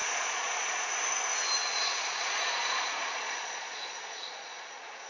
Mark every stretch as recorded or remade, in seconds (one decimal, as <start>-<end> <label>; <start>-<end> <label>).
0.0-0.9 remade; 0.9-1.6 recorded; 1.6-5.1 remade